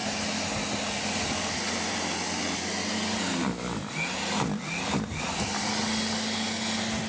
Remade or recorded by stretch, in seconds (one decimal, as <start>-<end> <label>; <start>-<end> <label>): 0.0-7.1 recorded

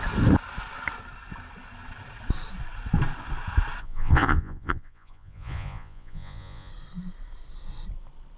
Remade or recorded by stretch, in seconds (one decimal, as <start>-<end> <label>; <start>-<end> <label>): 0.0-3.8 recorded; 3.8-6.7 remade; 6.7-8.4 recorded

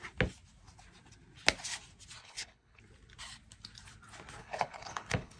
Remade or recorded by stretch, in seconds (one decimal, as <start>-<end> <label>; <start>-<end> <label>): 0.0-2.2 recorded; 2.2-2.8 remade; 2.8-4.4 recorded; 4.4-5.4 remade

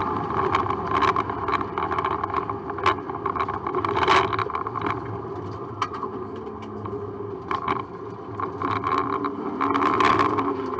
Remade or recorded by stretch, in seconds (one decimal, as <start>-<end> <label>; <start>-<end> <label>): 0.0-10.8 recorded

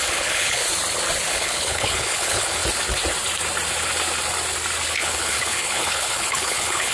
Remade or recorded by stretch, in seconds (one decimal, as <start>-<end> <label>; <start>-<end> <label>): 0.0-0.6 remade; 0.6-1.3 recorded; 1.3-2.6 remade; 2.6-4.9 recorded; 4.9-6.9 remade

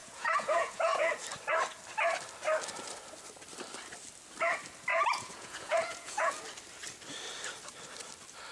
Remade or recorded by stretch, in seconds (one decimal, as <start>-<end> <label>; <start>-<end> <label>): 0.0-1.1 remade; 1.1-4.9 recorded; 4.9-6.3 remade; 6.3-8.5 recorded